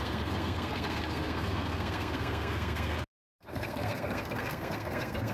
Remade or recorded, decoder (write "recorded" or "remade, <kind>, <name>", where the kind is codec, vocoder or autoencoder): remade, codec, SNAC